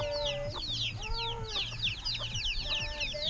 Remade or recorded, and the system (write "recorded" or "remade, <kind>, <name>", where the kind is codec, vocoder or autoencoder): recorded